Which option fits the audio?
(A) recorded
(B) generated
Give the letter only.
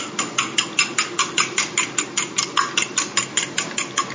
A